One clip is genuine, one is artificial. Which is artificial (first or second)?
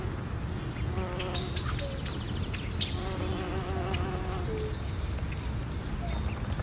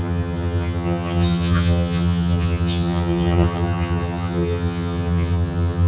second